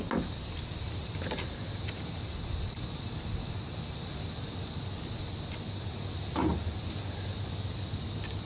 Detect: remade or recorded recorded